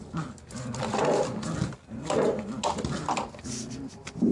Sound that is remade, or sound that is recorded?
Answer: recorded